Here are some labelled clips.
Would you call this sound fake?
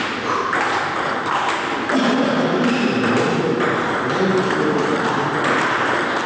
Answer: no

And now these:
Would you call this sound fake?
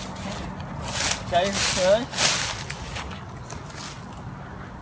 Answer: no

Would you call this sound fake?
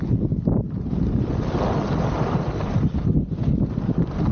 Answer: no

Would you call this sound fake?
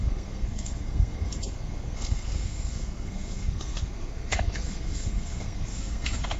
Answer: yes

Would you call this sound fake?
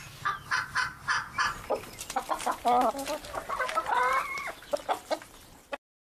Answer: no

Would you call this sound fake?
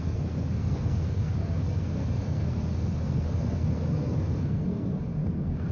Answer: yes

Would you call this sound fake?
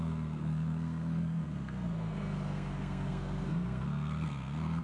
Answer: yes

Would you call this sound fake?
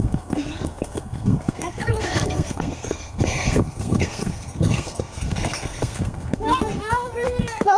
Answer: yes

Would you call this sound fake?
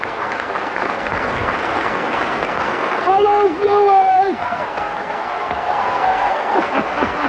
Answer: yes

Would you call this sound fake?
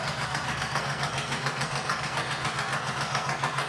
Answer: yes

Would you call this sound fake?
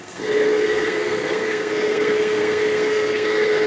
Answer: yes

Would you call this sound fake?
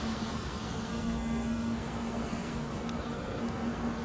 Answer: yes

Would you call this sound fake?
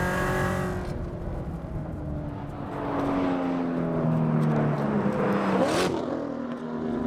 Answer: no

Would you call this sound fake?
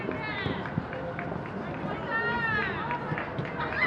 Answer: no